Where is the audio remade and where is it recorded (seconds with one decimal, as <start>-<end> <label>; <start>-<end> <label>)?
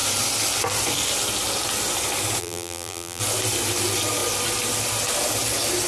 0.0-2.4 recorded; 2.4-3.2 remade; 3.2-5.9 recorded